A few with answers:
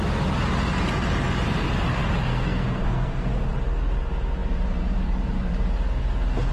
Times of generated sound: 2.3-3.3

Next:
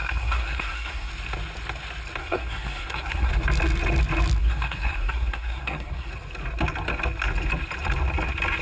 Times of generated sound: 0.0-1.1; 2.2-3.3; 4.4-6.1

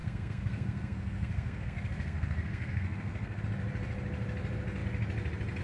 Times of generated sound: 0.0-3.4